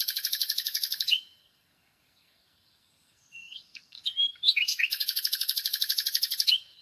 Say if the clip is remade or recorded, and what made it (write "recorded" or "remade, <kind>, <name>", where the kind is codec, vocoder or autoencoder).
remade, codec, SNAC